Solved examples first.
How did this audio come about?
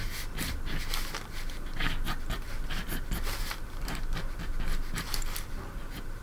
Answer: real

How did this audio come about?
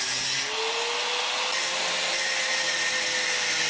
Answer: real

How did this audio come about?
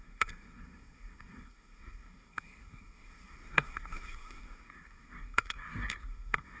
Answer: fake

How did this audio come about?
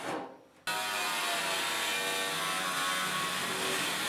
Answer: real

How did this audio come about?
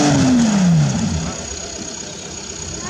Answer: real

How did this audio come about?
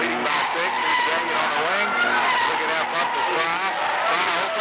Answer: real